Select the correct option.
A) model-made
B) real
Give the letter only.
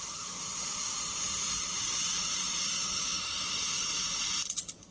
A